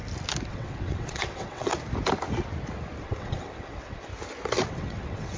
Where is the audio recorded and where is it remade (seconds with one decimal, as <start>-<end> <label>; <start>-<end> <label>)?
0.0-0.5 recorded; 0.5-1.7 remade; 1.7-3.0 recorded; 3.0-4.1 remade; 4.1-4.7 recorded; 4.7-5.4 remade